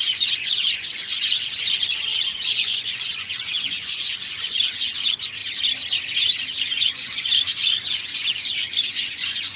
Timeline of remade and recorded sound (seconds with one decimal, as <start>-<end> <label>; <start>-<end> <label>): 0.0-5.4 remade; 5.4-6.6 recorded; 6.6-9.6 remade